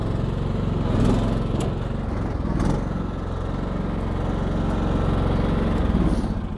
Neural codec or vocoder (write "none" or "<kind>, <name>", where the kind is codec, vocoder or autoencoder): none